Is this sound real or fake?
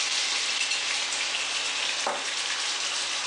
real